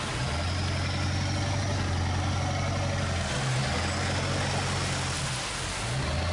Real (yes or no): yes